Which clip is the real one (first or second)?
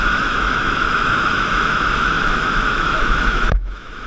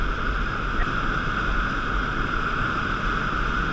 second